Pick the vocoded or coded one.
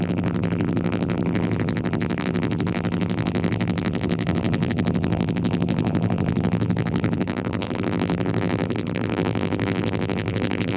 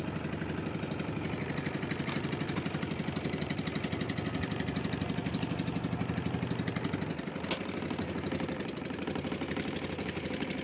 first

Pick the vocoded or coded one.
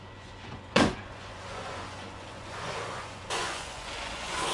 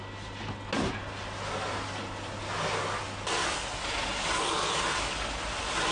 first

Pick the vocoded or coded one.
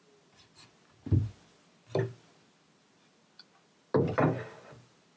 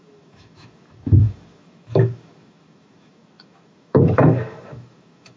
second